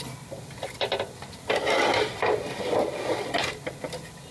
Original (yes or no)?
yes